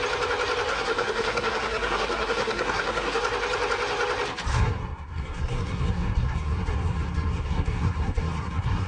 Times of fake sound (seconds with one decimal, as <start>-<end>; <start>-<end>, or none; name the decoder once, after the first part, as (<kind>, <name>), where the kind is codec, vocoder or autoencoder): 0.7-3.2 (codec, SNAC); 4.5-8.9